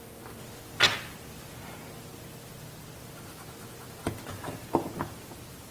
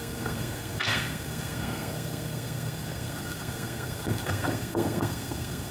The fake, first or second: second